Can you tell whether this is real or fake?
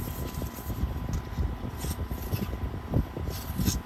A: real